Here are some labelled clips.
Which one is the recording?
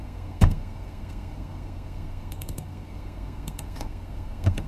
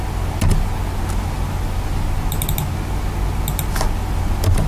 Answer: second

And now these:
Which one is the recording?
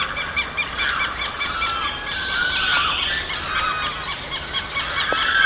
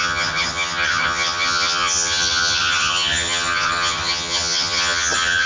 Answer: first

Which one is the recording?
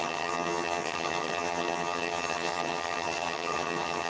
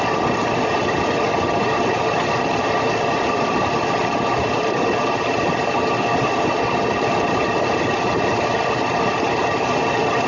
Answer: second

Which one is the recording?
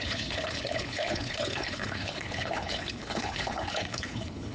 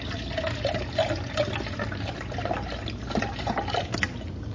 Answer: second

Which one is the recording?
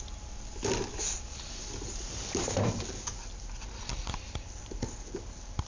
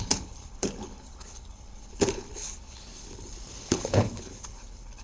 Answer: first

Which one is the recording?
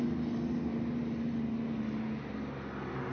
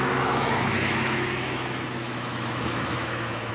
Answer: first